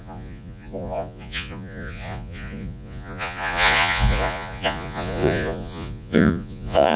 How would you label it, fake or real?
fake